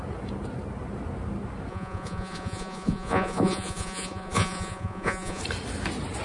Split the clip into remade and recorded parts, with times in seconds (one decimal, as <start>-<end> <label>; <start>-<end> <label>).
0.0-1.7 recorded; 1.7-5.4 remade; 5.4-6.2 recorded